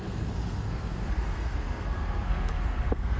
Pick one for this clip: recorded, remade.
remade